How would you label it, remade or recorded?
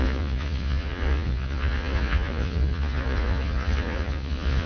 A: remade